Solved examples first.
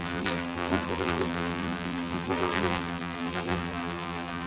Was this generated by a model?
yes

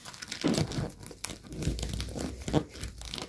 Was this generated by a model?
no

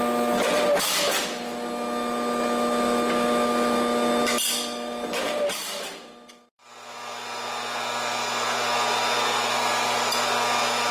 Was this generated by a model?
no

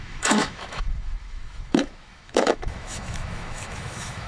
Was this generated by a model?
yes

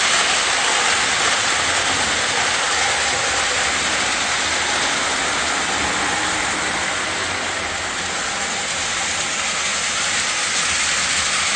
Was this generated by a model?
no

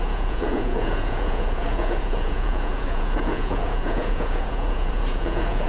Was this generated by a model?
yes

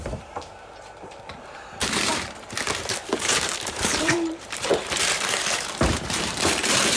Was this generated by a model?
yes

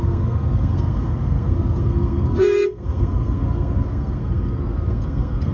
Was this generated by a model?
yes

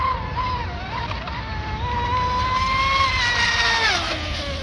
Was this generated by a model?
no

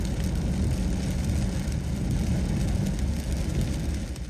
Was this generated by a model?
no